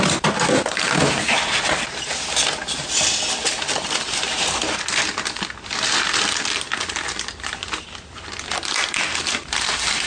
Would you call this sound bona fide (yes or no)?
yes